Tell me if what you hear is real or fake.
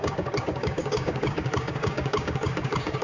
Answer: fake